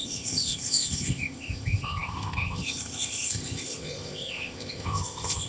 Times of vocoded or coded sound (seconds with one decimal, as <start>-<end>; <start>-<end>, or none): 0.0-5.5